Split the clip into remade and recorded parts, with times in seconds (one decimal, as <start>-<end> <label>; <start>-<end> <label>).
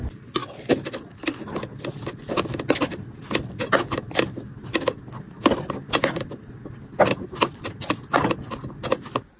0.0-9.4 recorded